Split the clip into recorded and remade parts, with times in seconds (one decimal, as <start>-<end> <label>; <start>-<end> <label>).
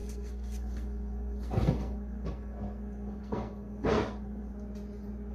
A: 0.0-4.5 remade; 4.5-5.3 recorded